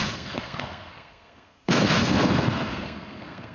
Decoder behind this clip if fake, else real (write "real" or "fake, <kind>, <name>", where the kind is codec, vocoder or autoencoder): fake, codec, SNAC